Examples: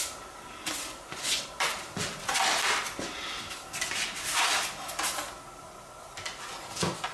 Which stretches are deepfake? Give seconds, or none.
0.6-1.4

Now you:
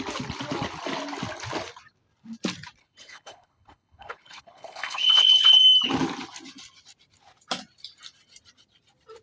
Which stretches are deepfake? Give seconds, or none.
2.8-5.6

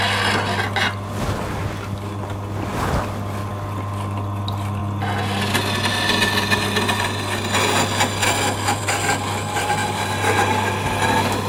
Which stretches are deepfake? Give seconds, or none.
none

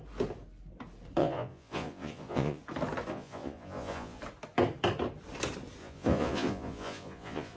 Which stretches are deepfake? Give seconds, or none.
1.2-2.6; 3.1-4.2; 5.8-7.6

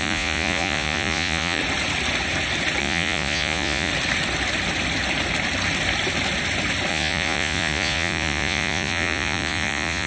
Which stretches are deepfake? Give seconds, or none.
0.0-1.6; 2.8-3.9; 6.9-10.1

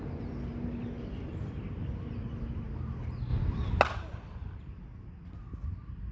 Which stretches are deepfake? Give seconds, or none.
none

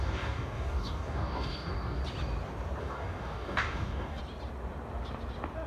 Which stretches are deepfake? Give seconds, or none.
0.0-2.0; 2.8-4.2

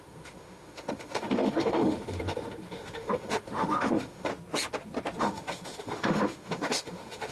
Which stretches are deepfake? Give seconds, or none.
0.0-4.3; 5.2-7.3